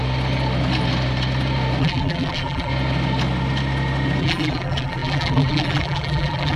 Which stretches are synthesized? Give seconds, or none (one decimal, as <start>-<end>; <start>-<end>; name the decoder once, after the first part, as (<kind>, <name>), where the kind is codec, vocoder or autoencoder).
1.8-2.7 (vocoder, BigVGAN v2); 4.2-6.6

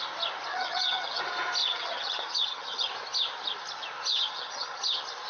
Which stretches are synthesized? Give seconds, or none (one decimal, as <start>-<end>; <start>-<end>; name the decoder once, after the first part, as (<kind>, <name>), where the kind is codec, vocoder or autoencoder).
0.5-1.2 (vocoder, HiFi-GAN); 1.6-2.9; 4.1-4.8

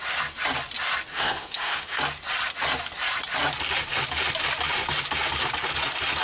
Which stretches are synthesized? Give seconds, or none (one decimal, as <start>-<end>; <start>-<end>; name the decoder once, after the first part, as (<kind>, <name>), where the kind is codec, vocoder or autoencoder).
1.1-2.0 (codec, SNAC)

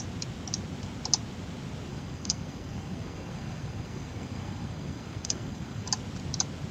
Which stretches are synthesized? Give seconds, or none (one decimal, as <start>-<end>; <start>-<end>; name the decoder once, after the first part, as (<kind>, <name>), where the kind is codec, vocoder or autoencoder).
1.9-5.9 (codec, SNAC)

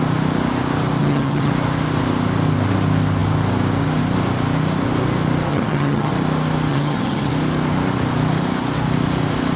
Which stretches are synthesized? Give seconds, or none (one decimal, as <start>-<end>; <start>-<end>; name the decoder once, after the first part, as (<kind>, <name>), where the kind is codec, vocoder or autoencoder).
1.0-1.5 (vocoder, HiFi-GAN); 5.5-6.1; 6.7-7.3

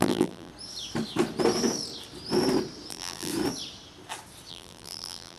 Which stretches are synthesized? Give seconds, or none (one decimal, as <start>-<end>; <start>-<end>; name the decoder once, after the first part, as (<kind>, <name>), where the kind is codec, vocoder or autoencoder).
0.0-0.5 (vocoder, BigVGAN v2); 2.9-3.3; 4.5-5.4

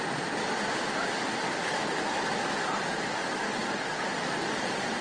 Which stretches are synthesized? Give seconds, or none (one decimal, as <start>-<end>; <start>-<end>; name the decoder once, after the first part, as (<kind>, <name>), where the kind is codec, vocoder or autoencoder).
none